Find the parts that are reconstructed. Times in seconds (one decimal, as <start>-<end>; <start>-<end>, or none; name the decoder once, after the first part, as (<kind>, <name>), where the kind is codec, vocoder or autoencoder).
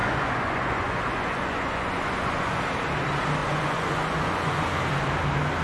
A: 0.0-2.6 (vocoder, Vocos); 3.4-4.7